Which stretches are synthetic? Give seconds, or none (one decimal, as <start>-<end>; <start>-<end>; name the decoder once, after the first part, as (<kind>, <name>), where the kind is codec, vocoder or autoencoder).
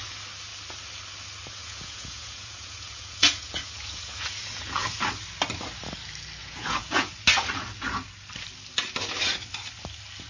1.6-4.4 (vocoder, Vocos); 6.4-7.1